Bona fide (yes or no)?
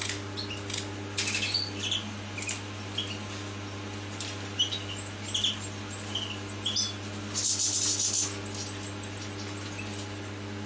yes